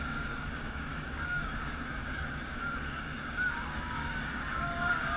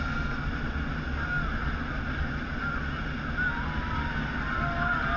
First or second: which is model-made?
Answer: first